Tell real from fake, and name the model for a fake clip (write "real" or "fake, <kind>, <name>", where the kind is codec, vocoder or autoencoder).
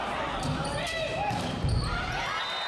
real